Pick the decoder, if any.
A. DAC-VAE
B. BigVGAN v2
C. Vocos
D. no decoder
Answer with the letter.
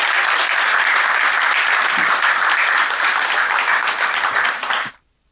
B